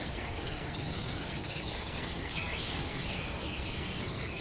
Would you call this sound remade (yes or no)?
yes